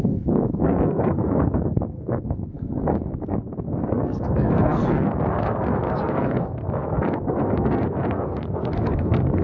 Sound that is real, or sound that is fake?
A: fake